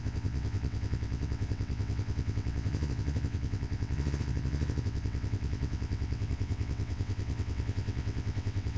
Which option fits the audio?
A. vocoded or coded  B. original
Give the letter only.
A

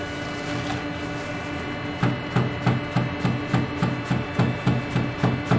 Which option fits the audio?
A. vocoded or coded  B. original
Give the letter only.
B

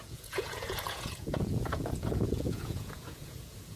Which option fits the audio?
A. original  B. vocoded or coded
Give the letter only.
B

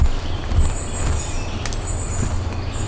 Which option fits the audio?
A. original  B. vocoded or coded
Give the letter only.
A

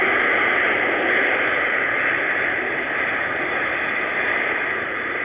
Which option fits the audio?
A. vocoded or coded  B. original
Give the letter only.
B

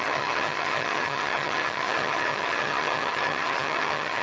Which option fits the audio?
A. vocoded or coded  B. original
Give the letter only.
A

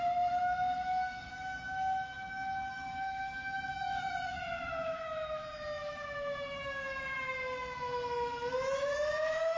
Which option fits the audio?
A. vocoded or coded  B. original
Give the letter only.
A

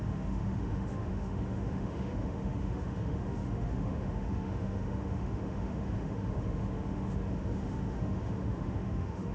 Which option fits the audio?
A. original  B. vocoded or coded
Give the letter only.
B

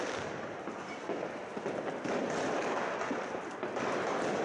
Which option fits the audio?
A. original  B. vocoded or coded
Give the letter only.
B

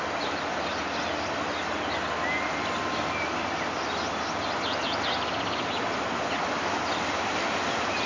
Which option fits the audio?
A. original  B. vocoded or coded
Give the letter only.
A